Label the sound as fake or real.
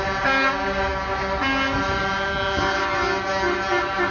real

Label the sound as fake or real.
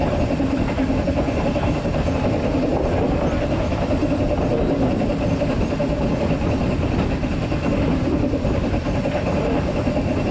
real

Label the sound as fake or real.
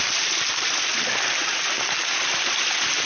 real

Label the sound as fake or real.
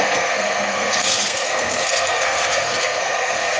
fake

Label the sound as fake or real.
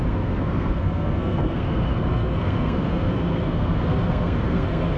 fake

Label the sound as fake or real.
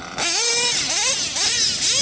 real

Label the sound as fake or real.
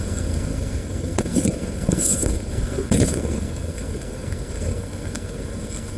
fake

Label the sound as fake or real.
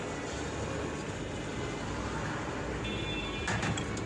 real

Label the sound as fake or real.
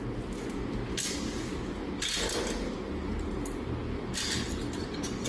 real